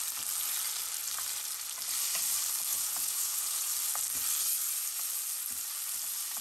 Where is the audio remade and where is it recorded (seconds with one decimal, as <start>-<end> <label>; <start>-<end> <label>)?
0.0-2.7 recorded; 2.7-3.7 remade; 3.7-6.4 recorded